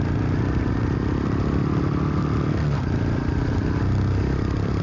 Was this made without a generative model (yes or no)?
yes